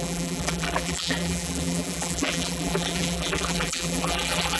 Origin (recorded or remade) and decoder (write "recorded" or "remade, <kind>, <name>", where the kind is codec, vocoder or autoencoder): remade, vocoder, BigVGAN v2